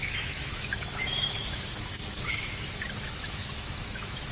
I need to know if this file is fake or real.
fake